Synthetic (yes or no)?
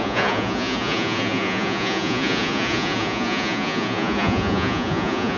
yes